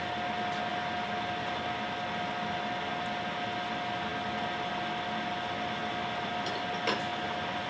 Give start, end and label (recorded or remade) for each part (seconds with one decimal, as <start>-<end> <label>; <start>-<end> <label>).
0.0-5.8 recorded; 5.8-6.3 remade; 6.3-7.1 recorded; 7.1-7.7 remade